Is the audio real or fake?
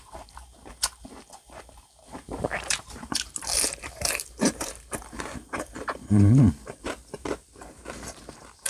fake